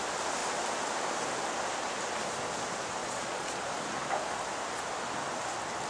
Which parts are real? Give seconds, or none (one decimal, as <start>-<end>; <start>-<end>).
0.0-3.0; 3.6-5.9